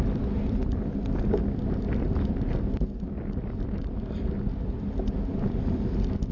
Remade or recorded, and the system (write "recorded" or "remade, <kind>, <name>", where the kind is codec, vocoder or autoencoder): recorded